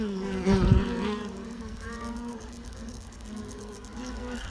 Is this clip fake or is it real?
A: fake